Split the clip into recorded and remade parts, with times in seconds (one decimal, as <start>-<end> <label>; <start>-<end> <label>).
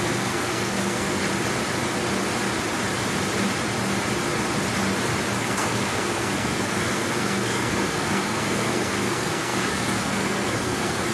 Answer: 0.0-1.2 remade; 1.2-5.4 recorded; 5.4-11.1 remade